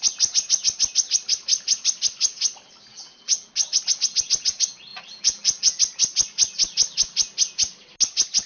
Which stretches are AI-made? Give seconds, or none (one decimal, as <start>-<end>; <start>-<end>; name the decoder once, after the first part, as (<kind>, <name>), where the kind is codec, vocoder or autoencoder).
2.9-3.5 (vocoder, BigVGAN v2); 4.9-5.8